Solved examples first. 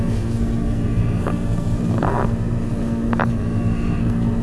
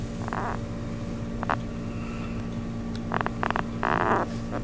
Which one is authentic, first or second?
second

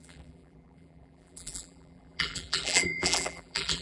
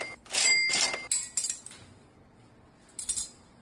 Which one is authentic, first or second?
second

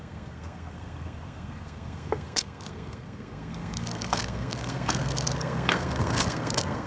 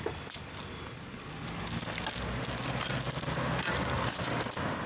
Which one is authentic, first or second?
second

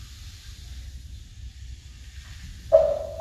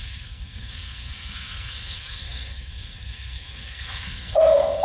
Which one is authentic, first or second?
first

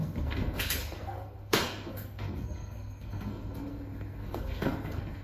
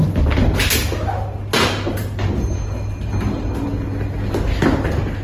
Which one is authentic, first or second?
second